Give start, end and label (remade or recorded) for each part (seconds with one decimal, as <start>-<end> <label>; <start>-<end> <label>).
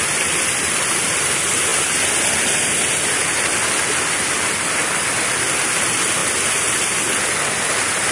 0.0-8.1 recorded